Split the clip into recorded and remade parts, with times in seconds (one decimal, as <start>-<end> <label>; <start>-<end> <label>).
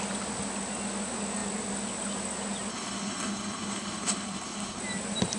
0.0-2.7 recorded; 2.7-4.8 remade; 4.8-5.4 recorded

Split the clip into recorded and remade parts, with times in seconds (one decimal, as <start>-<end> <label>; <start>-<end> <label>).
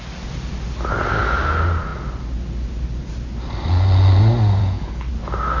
0.0-4.6 recorded; 4.6-5.1 remade; 5.1-5.6 recorded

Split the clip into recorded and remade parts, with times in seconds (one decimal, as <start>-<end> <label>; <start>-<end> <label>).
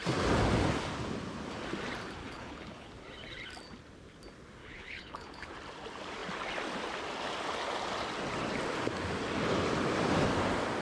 0.0-2.2 recorded; 2.2-2.9 remade; 2.9-4.6 recorded; 4.6-5.5 remade; 5.5-10.8 recorded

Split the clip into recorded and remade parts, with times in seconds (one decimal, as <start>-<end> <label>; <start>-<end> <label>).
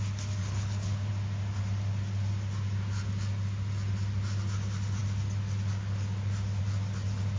0.0-0.4 recorded; 0.4-1.1 remade; 1.1-7.4 recorded